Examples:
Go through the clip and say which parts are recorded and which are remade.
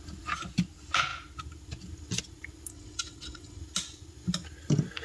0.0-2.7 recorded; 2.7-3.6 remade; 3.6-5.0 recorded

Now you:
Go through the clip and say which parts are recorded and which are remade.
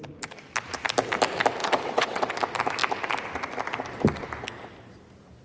0.0-1.6 recorded; 1.6-2.3 remade; 2.3-5.4 recorded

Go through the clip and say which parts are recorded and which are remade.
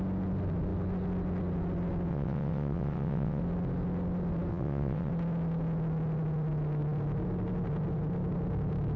0.0-2.1 recorded; 2.1-3.4 remade; 3.4-4.5 recorded; 4.5-5.1 remade; 5.1-9.0 recorded